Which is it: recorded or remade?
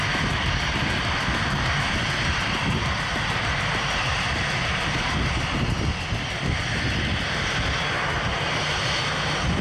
recorded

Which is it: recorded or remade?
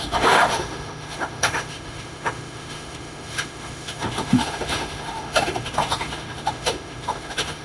remade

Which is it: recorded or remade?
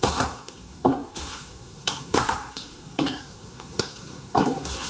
remade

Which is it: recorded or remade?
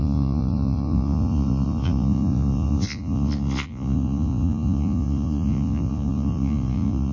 remade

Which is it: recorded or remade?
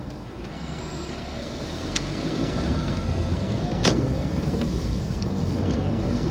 remade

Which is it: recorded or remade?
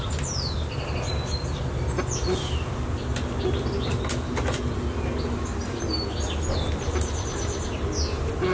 recorded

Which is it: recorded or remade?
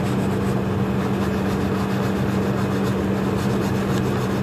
recorded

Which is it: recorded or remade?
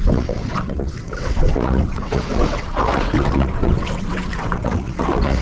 remade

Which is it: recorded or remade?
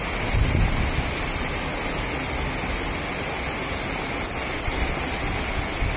recorded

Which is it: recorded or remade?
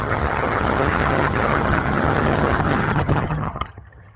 remade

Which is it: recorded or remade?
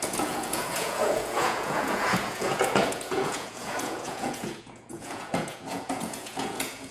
remade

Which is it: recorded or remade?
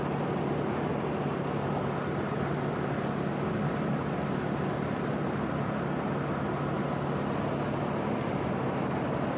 recorded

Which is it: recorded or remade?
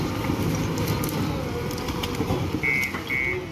recorded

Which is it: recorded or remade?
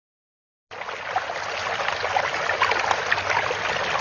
recorded